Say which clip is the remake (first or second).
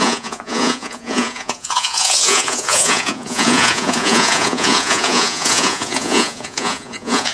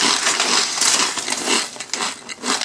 first